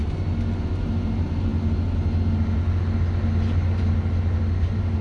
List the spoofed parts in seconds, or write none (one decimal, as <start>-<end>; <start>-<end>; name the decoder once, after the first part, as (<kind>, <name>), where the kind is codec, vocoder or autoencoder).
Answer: 0.8-1.5 (vocoder, BigVGAN v2); 4.5-5.0